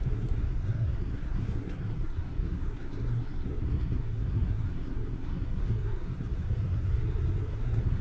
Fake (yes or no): yes